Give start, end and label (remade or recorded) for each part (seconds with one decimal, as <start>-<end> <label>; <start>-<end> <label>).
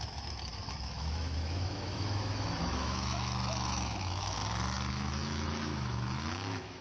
0.0-4.4 remade; 4.4-4.9 recorded; 4.9-6.8 remade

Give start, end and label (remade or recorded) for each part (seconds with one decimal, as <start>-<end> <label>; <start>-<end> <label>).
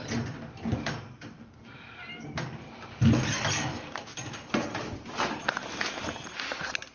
0.0-6.9 recorded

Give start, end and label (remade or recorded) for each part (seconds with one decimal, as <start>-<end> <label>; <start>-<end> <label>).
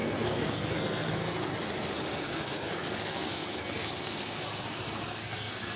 0.0-1.5 remade; 1.5-2.2 recorded; 2.2-5.8 remade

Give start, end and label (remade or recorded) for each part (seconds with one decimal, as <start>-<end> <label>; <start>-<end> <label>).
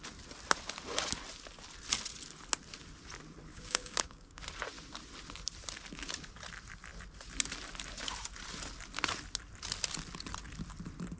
0.0-3.5 recorded; 3.5-4.4 remade; 4.4-11.2 recorded